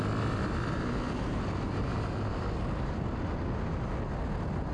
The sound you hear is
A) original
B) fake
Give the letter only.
A